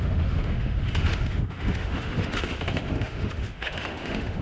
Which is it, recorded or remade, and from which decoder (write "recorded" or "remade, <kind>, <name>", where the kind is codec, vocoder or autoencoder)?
remade, autoencoder, DAC-VAE